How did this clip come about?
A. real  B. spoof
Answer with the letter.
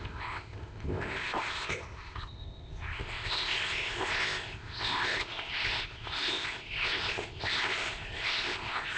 B